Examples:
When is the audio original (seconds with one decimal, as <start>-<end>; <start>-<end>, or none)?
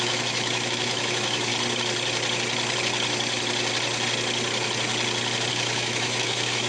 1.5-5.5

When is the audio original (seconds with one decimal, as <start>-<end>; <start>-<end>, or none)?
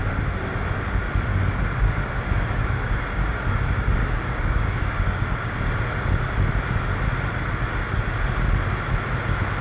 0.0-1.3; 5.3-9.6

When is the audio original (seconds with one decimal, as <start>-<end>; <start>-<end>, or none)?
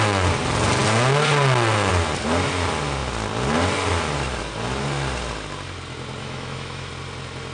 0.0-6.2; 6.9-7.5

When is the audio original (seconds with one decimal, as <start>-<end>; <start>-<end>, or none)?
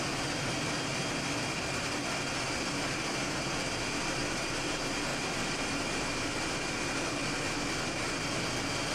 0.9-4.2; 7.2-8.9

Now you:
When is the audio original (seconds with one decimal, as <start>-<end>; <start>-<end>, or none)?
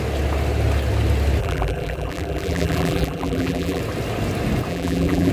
0.0-1.4; 3.8-4.7